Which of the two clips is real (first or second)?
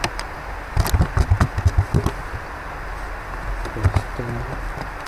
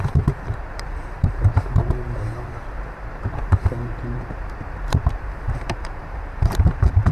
first